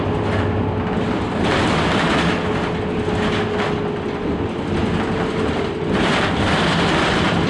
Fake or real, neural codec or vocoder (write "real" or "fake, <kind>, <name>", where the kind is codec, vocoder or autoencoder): real